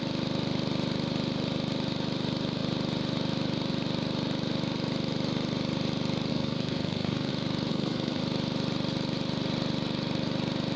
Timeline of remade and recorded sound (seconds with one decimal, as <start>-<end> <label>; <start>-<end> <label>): 0.0-6.3 recorded; 6.3-7.3 remade; 7.3-7.7 recorded; 7.7-8.2 remade; 8.2-10.8 recorded